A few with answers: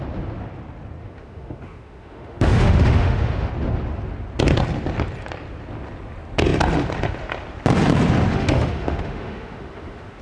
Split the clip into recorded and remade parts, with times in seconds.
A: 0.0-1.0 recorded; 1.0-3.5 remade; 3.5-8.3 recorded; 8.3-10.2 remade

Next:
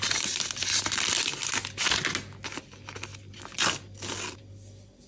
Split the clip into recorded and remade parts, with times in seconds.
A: 0.0-5.1 recorded

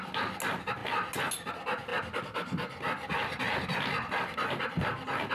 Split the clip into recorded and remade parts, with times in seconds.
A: 0.0-5.3 recorded